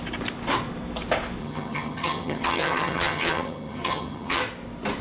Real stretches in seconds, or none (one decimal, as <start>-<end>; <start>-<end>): 0.0-1.4; 4.4-5.0